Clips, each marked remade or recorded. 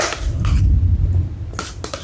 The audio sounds recorded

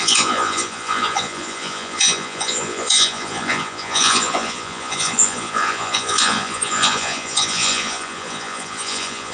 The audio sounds remade